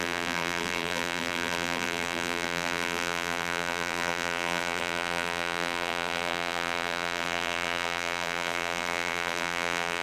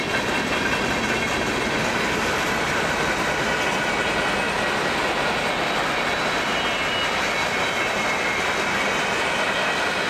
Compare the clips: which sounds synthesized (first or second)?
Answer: first